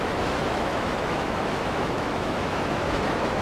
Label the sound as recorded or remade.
remade